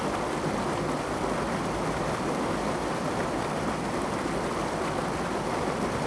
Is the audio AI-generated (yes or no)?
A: no